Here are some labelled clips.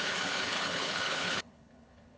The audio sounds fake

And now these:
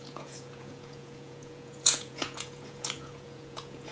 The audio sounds fake